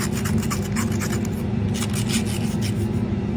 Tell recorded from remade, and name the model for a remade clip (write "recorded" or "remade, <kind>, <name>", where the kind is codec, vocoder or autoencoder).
recorded